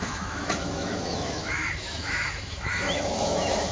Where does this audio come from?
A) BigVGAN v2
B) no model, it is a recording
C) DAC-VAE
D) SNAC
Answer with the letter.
C